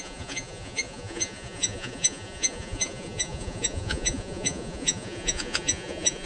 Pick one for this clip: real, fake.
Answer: fake